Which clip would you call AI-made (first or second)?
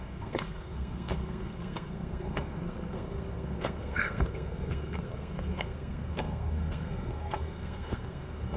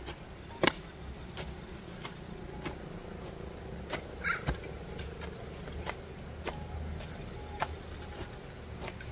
first